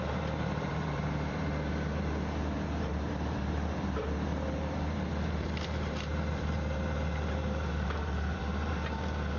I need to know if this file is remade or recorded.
remade